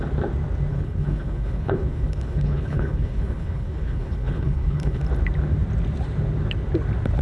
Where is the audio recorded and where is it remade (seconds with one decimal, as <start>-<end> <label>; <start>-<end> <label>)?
0.0-0.7 recorded; 0.7-5.0 remade; 5.0-7.2 recorded

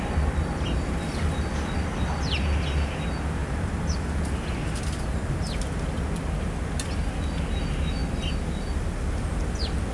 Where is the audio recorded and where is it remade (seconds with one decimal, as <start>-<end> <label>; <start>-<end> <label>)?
0.0-9.9 recorded

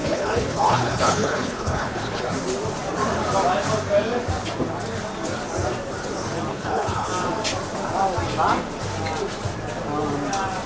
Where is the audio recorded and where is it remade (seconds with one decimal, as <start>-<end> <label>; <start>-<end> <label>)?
0.0-2.2 remade; 2.2-6.5 recorded; 6.5-7.1 remade; 7.1-10.7 recorded

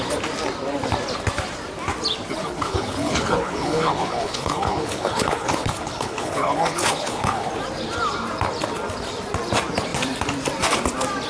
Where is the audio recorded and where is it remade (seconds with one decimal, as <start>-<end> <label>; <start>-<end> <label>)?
0.0-2.4 recorded; 2.4-7.5 remade; 7.5-11.3 recorded

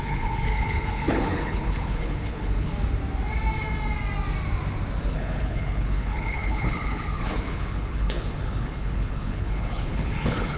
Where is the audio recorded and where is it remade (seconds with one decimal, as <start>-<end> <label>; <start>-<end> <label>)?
0.0-2.7 remade; 2.7-5.1 recorded; 5.1-10.6 remade

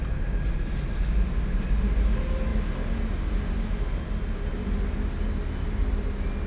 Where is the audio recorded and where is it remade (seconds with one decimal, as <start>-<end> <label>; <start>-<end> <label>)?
0.0-6.5 recorded